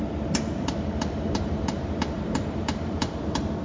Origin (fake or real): fake